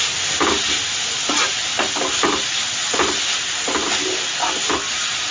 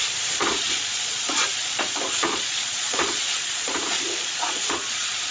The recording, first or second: first